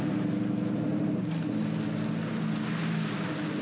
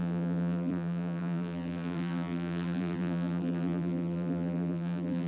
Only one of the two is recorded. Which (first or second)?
first